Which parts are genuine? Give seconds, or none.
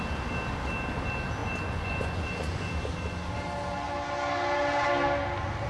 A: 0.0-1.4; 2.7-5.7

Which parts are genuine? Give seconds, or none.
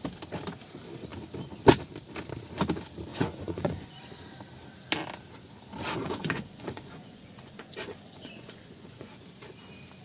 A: 0.0-3.1; 4.0-6.0; 9.1-10.0